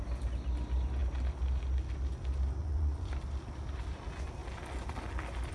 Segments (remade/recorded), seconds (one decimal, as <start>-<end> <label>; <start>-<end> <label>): 0.0-2.6 recorded; 2.6-3.1 remade; 3.1-5.5 recorded